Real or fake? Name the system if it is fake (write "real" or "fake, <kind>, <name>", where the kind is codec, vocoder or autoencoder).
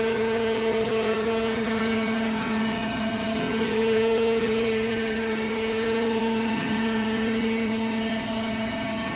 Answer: fake, vocoder, HiFi-GAN